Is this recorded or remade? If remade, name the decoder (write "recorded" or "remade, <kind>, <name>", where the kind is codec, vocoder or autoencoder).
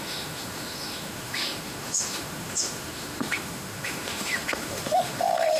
remade, autoencoder, DAC-VAE